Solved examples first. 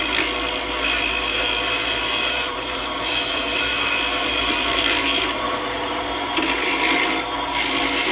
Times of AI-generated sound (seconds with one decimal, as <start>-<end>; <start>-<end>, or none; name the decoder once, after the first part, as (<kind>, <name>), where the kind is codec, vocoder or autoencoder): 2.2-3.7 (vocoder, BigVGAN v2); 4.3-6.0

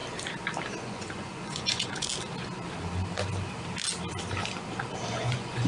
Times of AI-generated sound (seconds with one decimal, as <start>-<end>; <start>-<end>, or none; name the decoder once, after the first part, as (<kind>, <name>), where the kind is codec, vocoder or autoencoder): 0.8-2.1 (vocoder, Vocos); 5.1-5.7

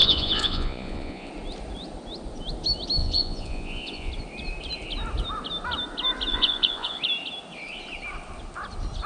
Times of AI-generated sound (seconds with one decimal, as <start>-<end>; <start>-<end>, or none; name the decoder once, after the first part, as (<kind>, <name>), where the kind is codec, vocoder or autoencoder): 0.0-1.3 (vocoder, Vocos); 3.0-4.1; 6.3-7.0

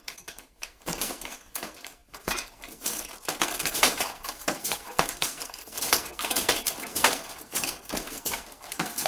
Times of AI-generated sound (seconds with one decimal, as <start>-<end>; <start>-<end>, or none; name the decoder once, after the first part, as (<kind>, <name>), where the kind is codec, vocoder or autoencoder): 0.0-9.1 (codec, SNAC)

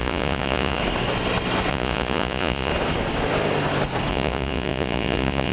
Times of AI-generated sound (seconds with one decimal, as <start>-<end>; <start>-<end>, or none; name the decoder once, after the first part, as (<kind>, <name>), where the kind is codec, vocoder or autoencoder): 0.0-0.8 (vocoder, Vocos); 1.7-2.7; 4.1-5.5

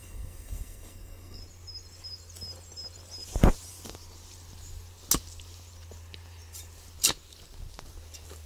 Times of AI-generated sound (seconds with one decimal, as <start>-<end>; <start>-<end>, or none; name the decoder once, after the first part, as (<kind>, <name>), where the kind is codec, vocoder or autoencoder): 0.0-1.4 (codec, SNAC)

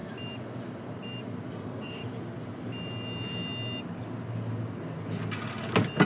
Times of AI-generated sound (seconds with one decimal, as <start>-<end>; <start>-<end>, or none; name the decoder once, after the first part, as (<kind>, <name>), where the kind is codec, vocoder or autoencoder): 1.5-2.0 (codec, DAC)